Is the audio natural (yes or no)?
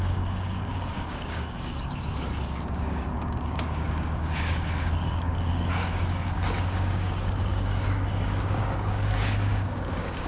no